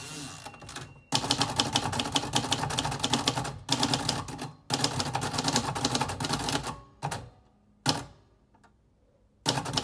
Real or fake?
real